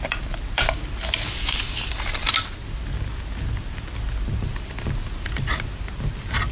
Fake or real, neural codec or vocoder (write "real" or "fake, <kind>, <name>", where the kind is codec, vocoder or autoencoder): real